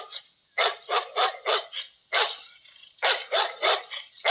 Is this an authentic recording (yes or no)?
yes